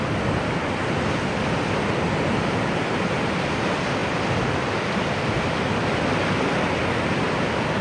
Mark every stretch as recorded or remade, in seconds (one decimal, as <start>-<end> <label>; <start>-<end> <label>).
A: 0.0-7.8 recorded